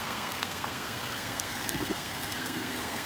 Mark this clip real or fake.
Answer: fake